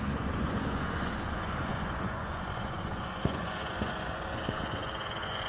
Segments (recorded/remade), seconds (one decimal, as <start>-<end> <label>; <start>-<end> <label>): 0.0-5.5 remade

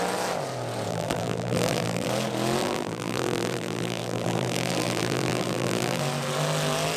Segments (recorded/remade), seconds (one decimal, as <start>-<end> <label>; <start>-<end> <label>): 0.0-0.9 recorded; 0.9-2.1 remade; 2.1-2.6 recorded; 2.6-6.0 remade; 6.0-7.0 recorded

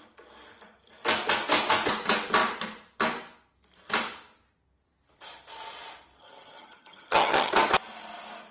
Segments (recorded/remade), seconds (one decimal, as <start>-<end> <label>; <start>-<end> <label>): 0.0-6.2 recorded; 6.2-7.5 remade; 7.5-8.5 recorded

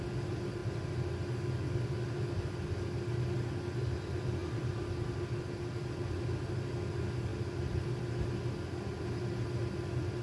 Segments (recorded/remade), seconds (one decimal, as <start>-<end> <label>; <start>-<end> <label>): 0.0-10.2 recorded

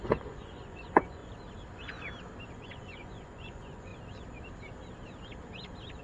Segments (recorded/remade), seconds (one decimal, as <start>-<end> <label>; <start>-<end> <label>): 0.0-1.2 remade; 1.2-2.5 recorded; 2.5-3.9 remade; 3.9-6.0 recorded

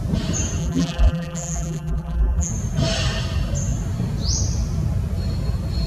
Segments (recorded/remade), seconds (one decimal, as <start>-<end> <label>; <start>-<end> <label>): 0.0-0.6 recorded; 0.6-2.5 remade; 2.5-5.9 recorded